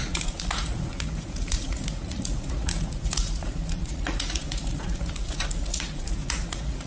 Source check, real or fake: fake